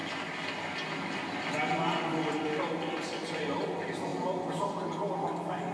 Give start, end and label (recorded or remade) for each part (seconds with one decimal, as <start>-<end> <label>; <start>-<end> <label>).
0.0-5.7 recorded